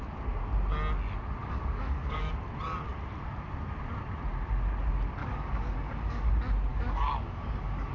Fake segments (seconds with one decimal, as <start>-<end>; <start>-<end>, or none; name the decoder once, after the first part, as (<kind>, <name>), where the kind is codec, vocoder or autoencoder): 1.4-2.3 (codec, DAC); 5.2-6.3; 6.7-7.9